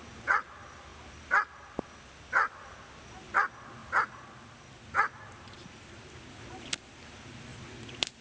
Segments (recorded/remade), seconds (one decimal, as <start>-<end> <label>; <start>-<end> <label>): 0.0-8.2 recorded